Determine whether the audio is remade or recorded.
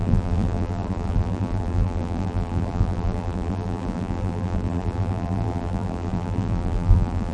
remade